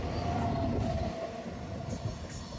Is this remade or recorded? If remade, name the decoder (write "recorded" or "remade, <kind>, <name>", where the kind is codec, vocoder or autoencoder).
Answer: recorded